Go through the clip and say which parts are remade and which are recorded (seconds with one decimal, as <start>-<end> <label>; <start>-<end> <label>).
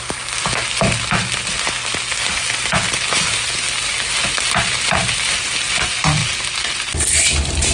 0.0-7.7 recorded